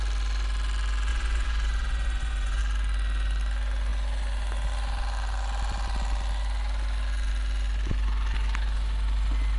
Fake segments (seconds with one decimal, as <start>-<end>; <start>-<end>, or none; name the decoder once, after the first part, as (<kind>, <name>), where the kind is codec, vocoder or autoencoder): 1.1-2.6 (vocoder, Vocos)